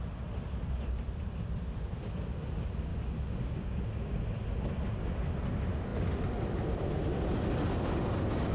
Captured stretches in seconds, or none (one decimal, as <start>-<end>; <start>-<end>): 0.0-2.9; 4.2-8.5